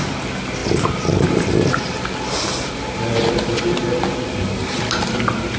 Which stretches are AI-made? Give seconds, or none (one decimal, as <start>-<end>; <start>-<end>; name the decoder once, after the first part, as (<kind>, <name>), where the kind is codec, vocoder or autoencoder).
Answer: none